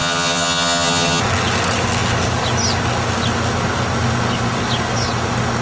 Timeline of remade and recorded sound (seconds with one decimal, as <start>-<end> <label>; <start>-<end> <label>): 0.0-1.2 remade; 1.2-5.6 recorded